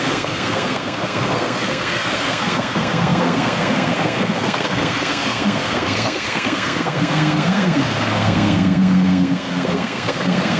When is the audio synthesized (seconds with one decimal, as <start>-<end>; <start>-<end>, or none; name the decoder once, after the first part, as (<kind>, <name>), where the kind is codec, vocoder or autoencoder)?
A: 0.0-10.6 (codec, SNAC)